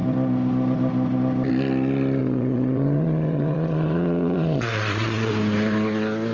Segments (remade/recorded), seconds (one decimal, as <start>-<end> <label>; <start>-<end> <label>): 0.0-2.2 recorded; 2.2-5.3 remade; 5.3-6.3 recorded